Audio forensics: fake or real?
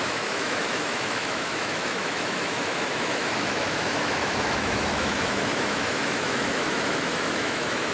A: fake